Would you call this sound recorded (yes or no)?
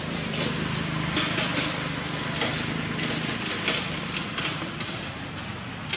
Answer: yes